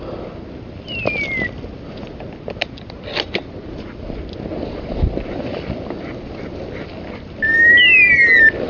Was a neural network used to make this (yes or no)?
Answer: no